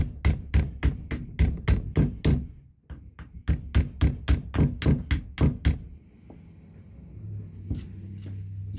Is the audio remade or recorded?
recorded